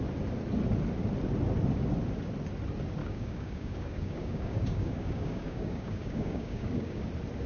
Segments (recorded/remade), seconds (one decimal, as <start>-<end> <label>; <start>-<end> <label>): 0.0-3.0 recorded; 3.0-7.1 remade; 7.1-7.5 recorded